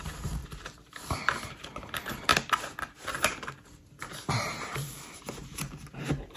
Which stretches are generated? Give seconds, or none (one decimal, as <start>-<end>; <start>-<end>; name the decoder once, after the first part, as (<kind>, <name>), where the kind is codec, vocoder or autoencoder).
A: 0.0-0.4 (vocoder, BigVGAN v2); 1.4-2.3; 4.1-6.4